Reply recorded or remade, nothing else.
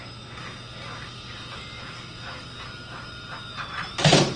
remade